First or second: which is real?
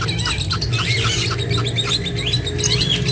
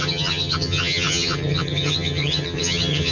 first